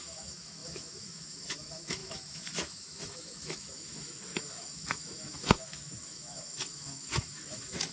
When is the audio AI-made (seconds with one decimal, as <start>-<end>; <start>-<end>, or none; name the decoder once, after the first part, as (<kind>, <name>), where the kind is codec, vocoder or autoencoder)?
0.0-7.9 (autoencoder, DAC-VAE)